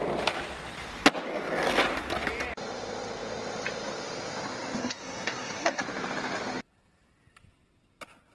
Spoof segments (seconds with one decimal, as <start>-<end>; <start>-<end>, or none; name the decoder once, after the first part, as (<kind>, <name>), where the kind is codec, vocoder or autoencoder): 4.8-5.8 (codec, SNAC)